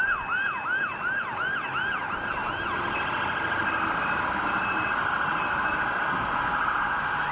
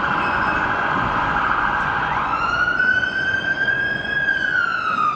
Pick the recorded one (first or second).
first